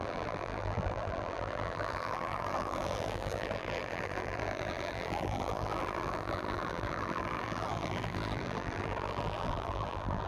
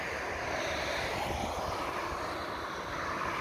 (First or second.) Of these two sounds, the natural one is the second